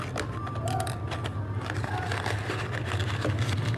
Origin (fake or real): real